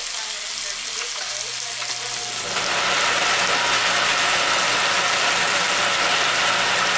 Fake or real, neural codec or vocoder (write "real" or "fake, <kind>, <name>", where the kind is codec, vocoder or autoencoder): real